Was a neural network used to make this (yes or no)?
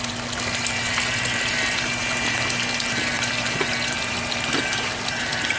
no